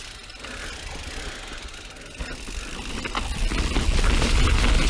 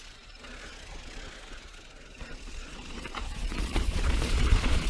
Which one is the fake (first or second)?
second